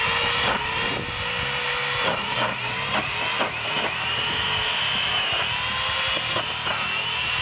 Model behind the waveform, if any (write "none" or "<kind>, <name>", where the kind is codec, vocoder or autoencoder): none